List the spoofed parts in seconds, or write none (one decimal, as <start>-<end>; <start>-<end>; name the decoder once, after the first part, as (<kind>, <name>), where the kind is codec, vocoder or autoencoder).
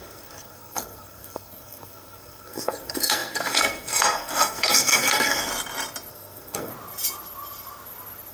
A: 0.0-5.5 (codec, SNAC); 6.1-6.7